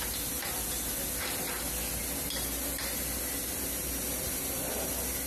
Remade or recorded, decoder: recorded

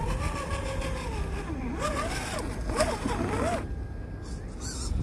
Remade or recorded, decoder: recorded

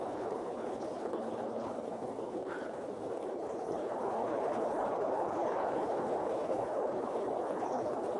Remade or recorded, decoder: remade, codec, HILCodec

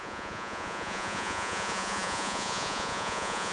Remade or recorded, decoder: remade, vocoder, Vocos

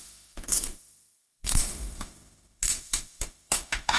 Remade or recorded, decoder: remade, autoencoder, DAC-VAE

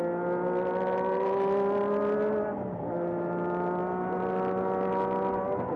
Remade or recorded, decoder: recorded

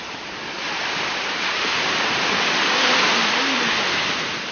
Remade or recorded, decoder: recorded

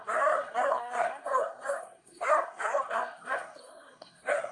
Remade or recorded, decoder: remade, codec, SNAC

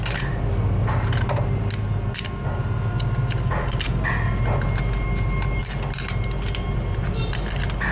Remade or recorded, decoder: recorded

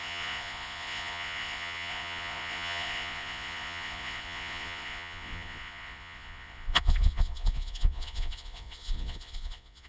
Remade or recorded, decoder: remade, vocoder, Vocos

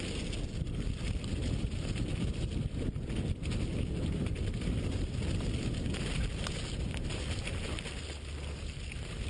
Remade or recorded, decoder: recorded